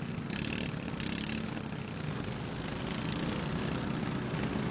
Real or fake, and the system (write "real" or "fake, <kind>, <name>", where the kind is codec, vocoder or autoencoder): real